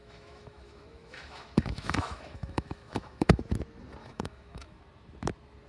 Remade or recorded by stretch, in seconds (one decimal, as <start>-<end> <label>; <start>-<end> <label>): 0.0-3.4 remade; 3.4-4.0 recorded; 4.0-4.8 remade; 4.8-5.7 recorded